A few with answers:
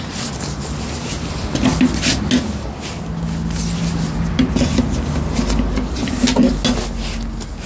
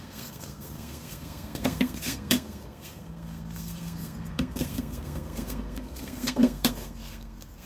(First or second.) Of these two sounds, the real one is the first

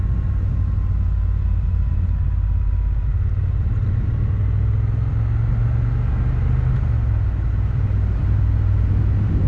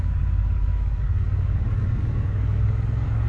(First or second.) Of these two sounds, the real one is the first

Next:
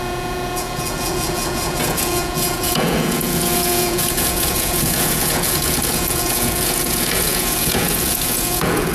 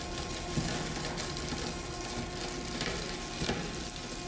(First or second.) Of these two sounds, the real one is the second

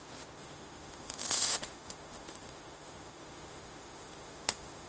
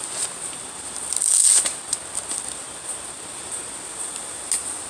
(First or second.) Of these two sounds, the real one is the second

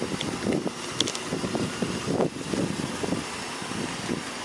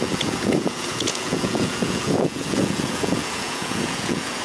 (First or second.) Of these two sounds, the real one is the first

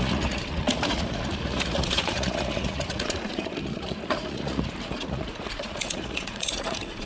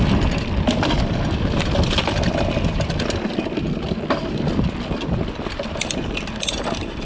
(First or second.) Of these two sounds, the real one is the second